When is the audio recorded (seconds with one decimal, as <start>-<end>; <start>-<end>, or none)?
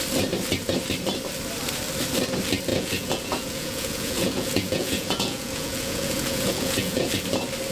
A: 0.0-2.7; 7.1-7.7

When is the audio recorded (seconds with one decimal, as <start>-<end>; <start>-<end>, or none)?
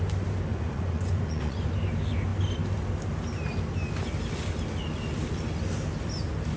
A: 0.0-0.5; 1.7-6.6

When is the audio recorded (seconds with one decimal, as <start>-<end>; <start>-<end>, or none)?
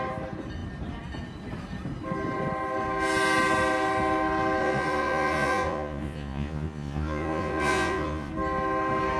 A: 0.0-4.6; 8.3-9.2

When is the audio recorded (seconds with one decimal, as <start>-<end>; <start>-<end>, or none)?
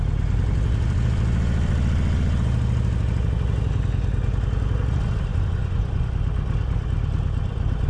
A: 0.0-5.3; 6.1-7.9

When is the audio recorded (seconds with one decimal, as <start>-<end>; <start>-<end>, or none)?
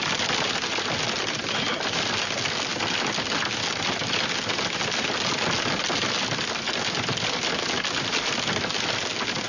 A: 0.0-9.5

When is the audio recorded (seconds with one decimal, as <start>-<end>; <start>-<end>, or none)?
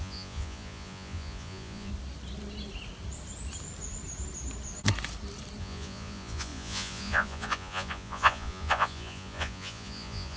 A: 1.9-5.6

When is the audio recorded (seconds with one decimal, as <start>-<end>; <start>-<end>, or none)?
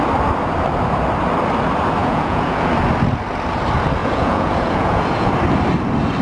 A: 0.0-2.0; 2.7-4.0; 5.3-6.2